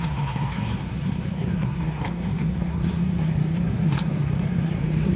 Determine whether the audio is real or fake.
fake